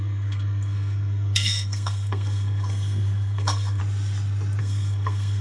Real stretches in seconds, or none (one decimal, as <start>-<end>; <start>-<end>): 3.8-4.6